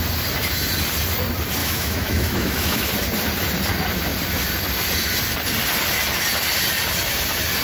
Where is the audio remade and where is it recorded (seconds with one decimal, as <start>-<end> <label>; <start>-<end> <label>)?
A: 0.0-1.6 recorded; 1.6-2.9 remade; 2.9-7.6 recorded